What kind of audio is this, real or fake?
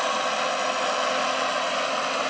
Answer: real